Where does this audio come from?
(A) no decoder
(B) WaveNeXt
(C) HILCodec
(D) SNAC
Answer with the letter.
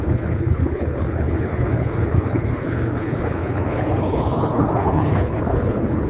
C